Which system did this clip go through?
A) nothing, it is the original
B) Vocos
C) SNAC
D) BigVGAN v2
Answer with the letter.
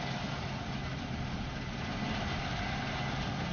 A